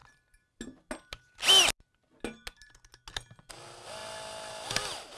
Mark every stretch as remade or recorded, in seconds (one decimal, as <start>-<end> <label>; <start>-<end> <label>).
0.0-5.2 recorded